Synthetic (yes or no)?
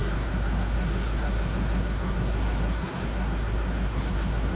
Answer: yes